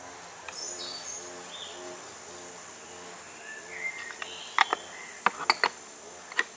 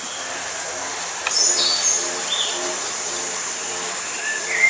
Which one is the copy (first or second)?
second